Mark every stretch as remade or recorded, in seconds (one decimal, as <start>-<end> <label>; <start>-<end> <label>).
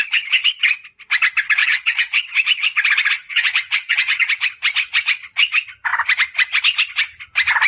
0.0-1.6 recorded; 1.6-2.2 remade; 2.2-3.3 recorded; 3.3-4.2 remade; 4.2-7.7 recorded